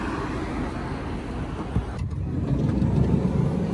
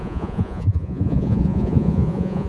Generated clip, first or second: second